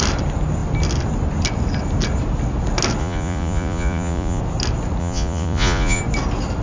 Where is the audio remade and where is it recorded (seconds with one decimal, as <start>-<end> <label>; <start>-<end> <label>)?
0.0-3.0 recorded; 3.0-4.4 remade; 4.4-5.0 recorded; 5.0-6.0 remade; 6.0-6.6 recorded